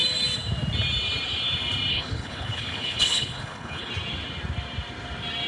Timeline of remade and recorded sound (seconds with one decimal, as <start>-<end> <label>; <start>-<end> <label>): 0.0-1.9 recorded; 1.9-3.9 remade; 3.9-5.5 recorded